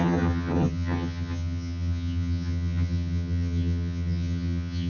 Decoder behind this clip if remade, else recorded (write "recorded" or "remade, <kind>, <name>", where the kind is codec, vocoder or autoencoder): remade, vocoder, HiFi-GAN